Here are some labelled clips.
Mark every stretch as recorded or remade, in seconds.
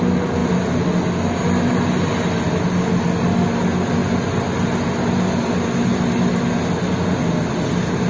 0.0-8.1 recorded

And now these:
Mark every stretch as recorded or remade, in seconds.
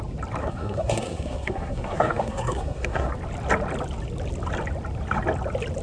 0.0-0.4 recorded; 0.4-3.1 remade; 3.1-5.8 recorded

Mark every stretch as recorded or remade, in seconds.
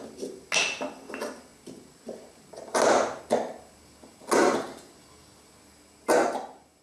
0.0-6.8 recorded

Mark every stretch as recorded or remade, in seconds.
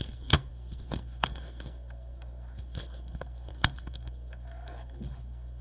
0.0-5.6 remade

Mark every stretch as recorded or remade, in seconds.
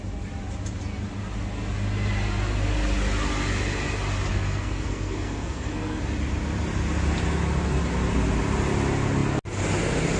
0.0-4.3 recorded; 4.3-6.0 remade; 6.0-10.2 recorded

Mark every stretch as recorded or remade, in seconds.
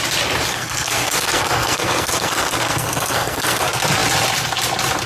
0.0-0.5 recorded; 0.5-3.6 remade; 3.6-5.1 recorded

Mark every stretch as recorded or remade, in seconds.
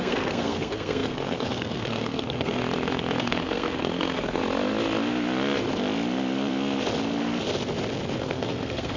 0.0-2.6 remade; 2.6-3.2 recorded; 3.2-4.4 remade; 4.4-8.2 recorded; 8.2-9.0 remade